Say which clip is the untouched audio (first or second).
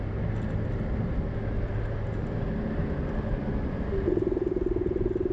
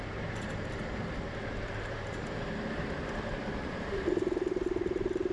first